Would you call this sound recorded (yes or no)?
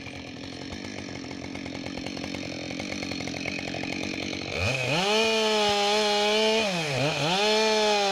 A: yes